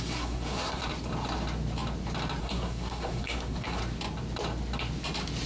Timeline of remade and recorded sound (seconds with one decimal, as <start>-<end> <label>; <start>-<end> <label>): 0.0-0.8 remade; 0.8-2.4 recorded; 2.4-3.8 remade; 3.8-5.5 recorded